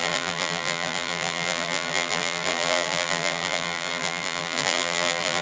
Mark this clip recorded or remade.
remade